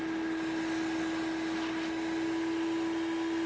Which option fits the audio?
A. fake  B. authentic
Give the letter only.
B